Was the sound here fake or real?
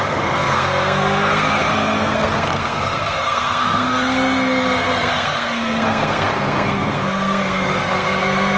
fake